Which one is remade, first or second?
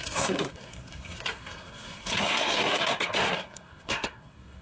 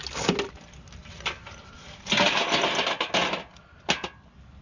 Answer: first